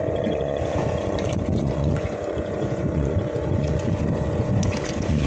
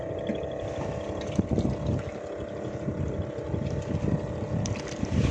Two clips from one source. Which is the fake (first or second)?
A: first